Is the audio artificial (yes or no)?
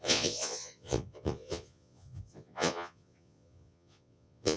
yes